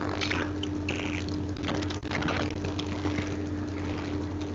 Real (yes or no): yes